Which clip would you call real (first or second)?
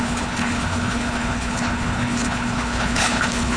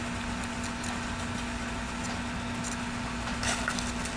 second